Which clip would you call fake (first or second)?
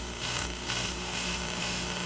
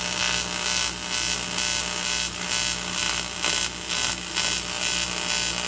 first